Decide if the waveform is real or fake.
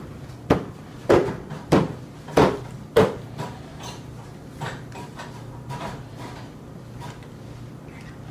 fake